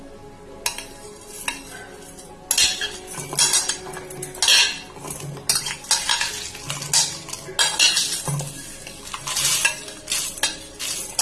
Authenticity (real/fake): real